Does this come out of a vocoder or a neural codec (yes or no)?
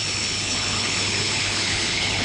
yes